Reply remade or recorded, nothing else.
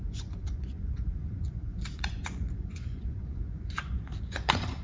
remade